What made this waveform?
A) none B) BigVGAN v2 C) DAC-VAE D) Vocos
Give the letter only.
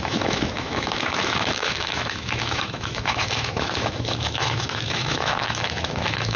C